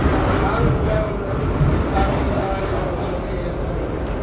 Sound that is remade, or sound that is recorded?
recorded